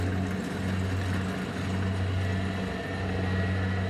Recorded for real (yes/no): yes